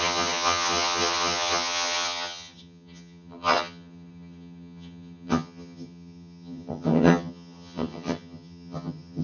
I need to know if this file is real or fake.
fake